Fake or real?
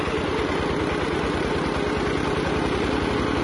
real